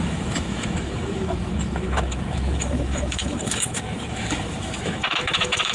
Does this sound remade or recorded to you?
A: remade